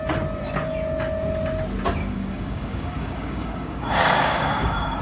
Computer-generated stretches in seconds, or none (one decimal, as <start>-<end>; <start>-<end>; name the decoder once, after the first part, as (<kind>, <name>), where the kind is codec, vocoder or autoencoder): 2.0-5.0 (codec, DAC)